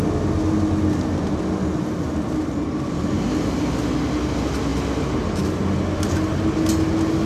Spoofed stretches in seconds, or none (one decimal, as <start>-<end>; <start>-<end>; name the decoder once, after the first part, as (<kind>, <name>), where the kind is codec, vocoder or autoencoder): none